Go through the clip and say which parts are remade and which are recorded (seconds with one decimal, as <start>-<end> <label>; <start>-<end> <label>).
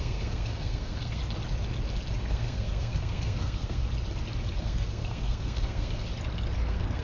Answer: 0.0-1.2 remade; 1.2-2.3 recorded; 2.3-3.8 remade; 3.8-4.6 recorded; 4.6-6.1 remade; 6.1-6.6 recorded; 6.6-7.0 remade